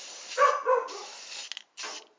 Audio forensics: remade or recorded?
recorded